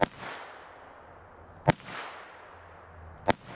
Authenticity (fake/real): real